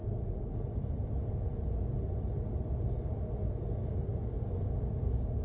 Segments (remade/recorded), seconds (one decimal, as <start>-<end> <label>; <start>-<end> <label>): 0.0-3.8 recorded; 3.8-5.4 remade